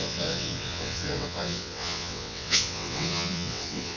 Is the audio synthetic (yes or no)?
yes